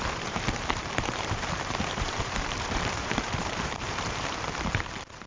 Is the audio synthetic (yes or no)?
yes